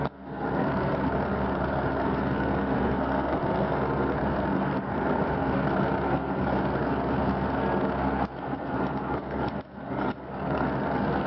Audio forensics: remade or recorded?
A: remade